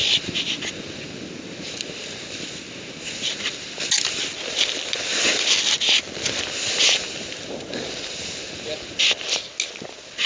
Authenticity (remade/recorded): recorded